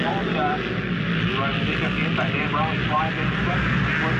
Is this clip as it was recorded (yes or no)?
yes